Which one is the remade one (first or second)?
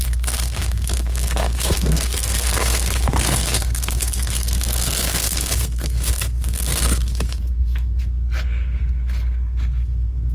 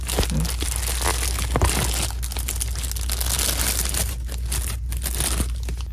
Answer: first